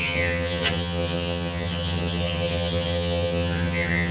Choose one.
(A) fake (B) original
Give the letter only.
A